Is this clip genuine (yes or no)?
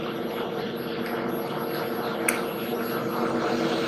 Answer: yes